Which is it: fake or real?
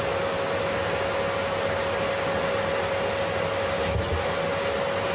real